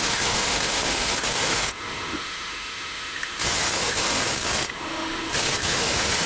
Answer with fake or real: fake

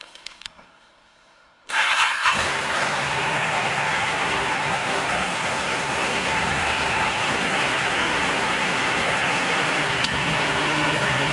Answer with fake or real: fake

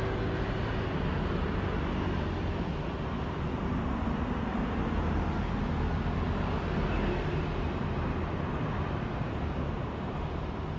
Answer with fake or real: real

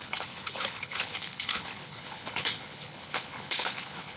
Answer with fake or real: fake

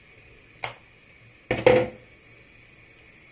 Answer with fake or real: real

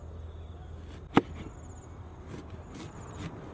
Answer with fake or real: real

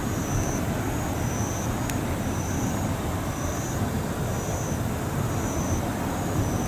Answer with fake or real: fake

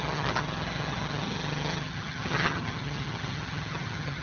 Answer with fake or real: fake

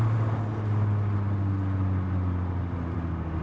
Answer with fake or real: real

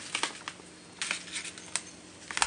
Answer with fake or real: real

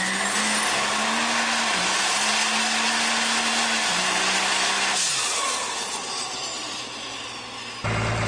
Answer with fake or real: real